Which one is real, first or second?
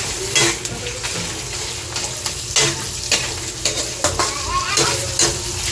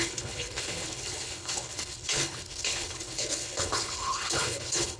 first